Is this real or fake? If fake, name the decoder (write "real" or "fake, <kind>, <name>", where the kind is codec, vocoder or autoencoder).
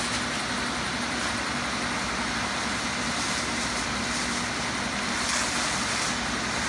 real